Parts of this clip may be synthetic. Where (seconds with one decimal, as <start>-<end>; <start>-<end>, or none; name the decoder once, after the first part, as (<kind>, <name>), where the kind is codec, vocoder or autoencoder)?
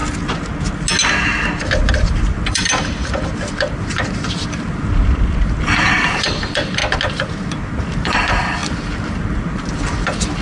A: 1.9-6.8 (vocoder, BigVGAN v2); 7.8-10.4